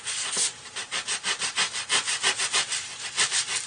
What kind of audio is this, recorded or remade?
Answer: remade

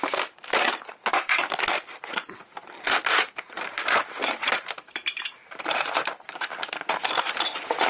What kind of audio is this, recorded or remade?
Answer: remade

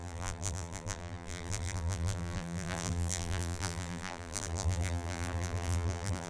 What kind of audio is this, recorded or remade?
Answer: remade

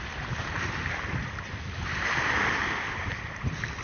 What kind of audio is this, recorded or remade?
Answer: remade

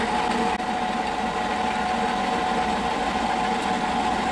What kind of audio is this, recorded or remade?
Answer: recorded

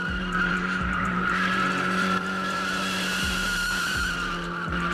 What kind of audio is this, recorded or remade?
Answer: remade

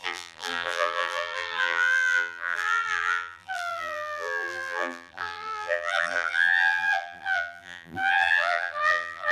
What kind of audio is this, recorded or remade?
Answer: remade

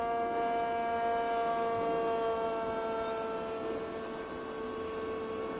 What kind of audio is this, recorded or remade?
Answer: recorded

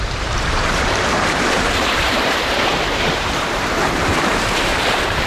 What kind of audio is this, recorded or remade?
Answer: remade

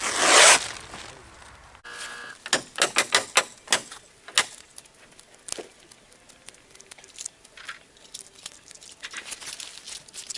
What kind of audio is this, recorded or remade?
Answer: recorded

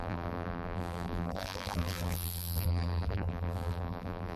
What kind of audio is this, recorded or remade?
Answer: remade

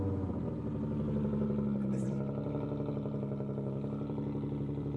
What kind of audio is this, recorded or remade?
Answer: remade